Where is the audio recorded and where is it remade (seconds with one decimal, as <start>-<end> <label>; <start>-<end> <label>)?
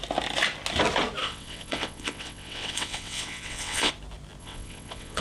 0.0-1.2 recorded; 1.2-3.9 remade; 3.9-4.4 recorded; 4.4-5.2 remade